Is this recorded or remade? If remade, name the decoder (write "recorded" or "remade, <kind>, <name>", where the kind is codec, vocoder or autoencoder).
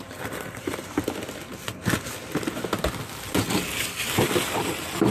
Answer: recorded